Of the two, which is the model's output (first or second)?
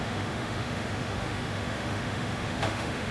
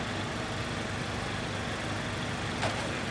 first